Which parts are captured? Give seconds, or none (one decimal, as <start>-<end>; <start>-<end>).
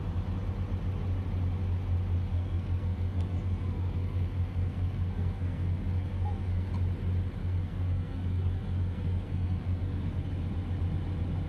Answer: 0.0-2.3; 6.7-7.4; 10.3-11.5